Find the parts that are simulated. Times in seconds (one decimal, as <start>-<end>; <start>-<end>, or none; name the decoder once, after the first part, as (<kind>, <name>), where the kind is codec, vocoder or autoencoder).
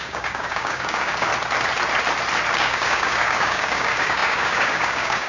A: 0.0-1.3 (codec, DAC); 2.5-5.3